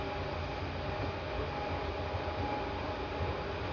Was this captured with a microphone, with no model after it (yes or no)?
yes